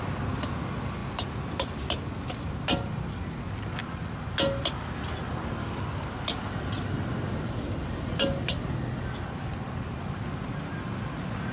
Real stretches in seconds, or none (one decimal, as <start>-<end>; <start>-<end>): 0.0-11.5